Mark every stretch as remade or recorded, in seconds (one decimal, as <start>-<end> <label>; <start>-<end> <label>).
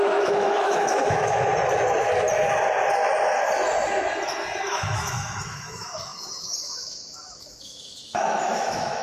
0.0-1.5 remade; 1.5-4.7 recorded; 4.7-9.0 remade